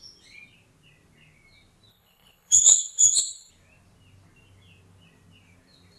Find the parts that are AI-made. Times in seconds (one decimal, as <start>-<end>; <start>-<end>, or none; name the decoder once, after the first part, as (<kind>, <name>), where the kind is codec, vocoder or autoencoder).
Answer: 1.9-3.5 (codec, HILCodec)